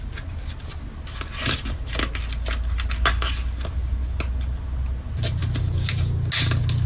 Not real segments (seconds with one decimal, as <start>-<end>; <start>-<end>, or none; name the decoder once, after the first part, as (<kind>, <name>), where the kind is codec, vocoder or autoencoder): none